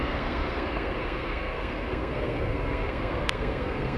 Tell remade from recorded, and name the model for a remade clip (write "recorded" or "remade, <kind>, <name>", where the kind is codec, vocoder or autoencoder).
remade, codec, SNAC